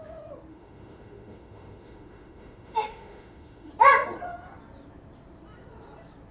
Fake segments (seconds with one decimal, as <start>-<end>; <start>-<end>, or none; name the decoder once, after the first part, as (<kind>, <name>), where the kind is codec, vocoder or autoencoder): 0.5-3.7 (autoencoder, DAC-VAE)